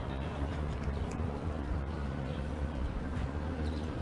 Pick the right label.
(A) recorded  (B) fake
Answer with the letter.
B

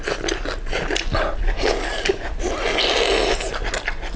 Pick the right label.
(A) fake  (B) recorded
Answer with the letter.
B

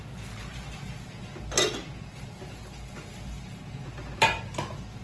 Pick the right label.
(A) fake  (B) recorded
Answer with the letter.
B